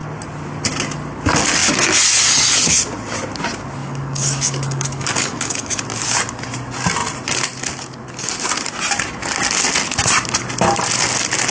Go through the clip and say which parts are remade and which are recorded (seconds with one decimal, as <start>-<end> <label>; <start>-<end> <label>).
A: 0.0-3.8 recorded; 3.8-5.8 remade; 5.8-11.5 recorded